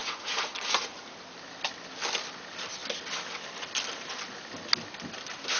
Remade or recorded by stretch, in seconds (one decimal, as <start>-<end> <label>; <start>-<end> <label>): 0.0-1.0 remade; 1.0-5.6 recorded